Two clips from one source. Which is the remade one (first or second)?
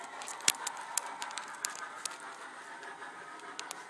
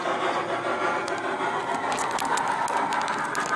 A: first